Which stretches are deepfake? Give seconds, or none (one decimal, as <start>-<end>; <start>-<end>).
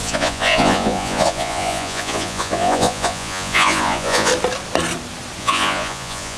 0.0-4.3; 5.4-6.4